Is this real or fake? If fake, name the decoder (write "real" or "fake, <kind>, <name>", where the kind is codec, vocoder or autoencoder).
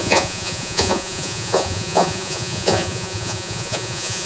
fake, vocoder, Vocos